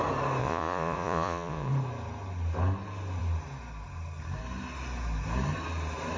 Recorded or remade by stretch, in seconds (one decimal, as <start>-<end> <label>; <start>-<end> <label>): 0.0-0.4 recorded; 0.4-1.7 remade; 1.7-6.2 recorded